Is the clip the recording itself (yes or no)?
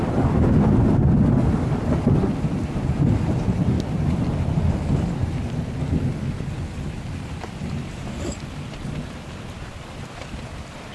yes